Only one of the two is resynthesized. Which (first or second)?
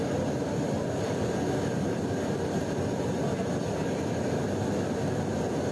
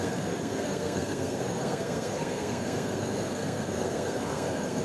second